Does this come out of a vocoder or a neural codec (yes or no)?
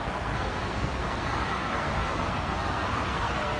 yes